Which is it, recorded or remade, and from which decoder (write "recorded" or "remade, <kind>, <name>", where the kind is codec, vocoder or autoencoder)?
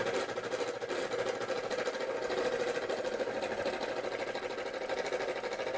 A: recorded